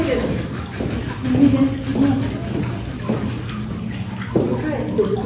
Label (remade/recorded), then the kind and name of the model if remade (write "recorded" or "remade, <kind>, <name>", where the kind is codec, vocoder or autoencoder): recorded